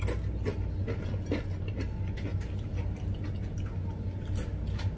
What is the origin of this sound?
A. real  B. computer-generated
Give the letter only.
A